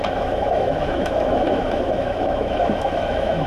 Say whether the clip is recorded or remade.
remade